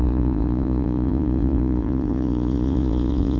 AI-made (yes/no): yes